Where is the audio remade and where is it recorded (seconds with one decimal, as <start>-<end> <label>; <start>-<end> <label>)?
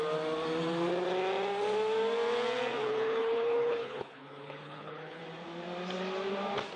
0.0-2.8 recorded; 2.8-5.2 remade; 5.2-6.8 recorded